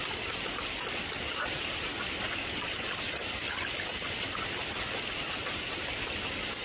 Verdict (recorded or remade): recorded